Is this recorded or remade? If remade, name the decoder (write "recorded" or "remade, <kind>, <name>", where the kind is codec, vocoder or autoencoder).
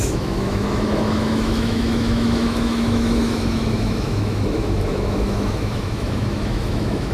remade, autoencoder, DAC-VAE